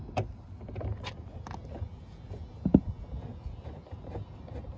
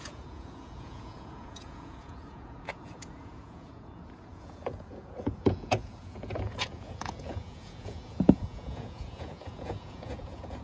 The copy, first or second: second